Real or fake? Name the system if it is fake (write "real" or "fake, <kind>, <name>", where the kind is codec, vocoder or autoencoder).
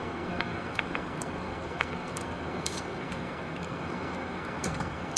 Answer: fake, codec, SNAC